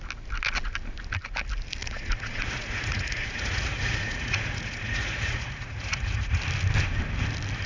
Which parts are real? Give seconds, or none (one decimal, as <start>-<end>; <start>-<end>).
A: 0.0-1.8; 6.4-7.7